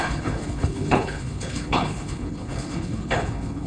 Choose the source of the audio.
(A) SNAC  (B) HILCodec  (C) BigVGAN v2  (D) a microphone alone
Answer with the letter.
B